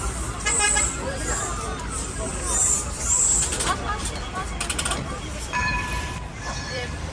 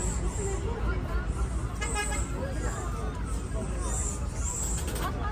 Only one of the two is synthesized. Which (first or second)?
first